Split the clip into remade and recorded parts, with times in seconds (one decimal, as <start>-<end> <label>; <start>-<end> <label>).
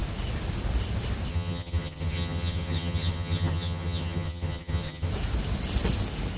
0.0-1.3 recorded; 1.3-5.1 remade; 5.1-6.4 recorded